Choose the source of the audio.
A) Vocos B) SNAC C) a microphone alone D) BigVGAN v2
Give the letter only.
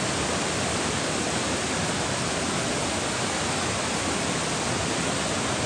C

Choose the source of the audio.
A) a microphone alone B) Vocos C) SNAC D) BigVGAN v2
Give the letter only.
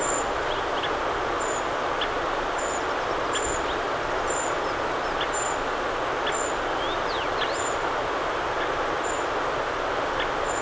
A